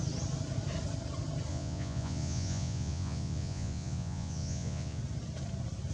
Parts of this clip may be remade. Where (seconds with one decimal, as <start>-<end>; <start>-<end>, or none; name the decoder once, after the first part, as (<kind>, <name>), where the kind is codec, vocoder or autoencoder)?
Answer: 1.5-5.0 (vocoder, Vocos)

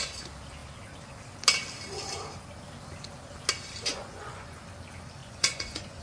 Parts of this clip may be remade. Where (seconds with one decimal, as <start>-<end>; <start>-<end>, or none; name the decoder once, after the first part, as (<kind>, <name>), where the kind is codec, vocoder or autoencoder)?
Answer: 3.9-4.6 (vocoder, Vocos); 5.2-6.0